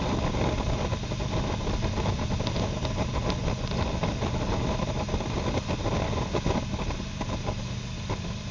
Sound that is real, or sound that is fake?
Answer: real